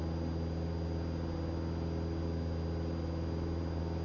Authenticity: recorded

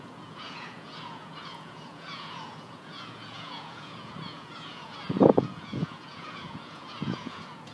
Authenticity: remade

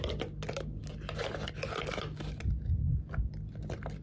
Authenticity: recorded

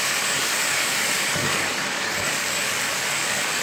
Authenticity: remade